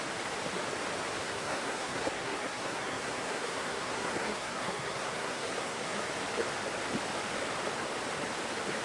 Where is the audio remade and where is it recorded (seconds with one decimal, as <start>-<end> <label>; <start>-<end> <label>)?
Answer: 0.0-1.2 recorded; 1.2-6.1 remade; 6.1-8.8 recorded